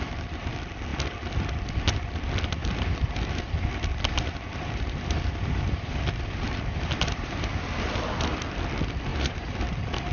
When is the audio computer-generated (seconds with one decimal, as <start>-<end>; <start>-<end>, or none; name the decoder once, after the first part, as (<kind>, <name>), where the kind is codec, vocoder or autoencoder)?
2.6-3.4 (vocoder, BigVGAN v2); 3.9-7.9; 9.1-9.6